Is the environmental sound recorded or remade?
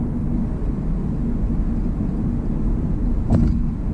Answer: recorded